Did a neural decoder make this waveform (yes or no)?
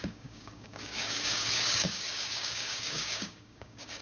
yes